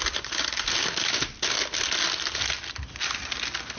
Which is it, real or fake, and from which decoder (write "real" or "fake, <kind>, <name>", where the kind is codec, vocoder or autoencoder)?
real